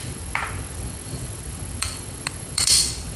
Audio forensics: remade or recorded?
remade